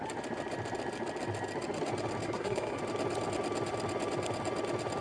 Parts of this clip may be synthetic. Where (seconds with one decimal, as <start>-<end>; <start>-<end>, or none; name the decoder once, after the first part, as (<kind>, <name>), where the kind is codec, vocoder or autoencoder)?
2.2-2.8 (codec, SNAC)